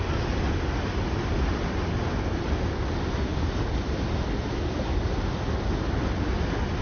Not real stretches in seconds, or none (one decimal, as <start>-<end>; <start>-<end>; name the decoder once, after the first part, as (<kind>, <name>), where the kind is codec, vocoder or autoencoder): none